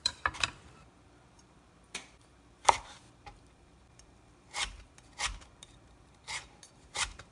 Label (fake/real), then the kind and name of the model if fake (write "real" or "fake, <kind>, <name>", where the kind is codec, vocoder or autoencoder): fake, vocoder, BigVGAN v2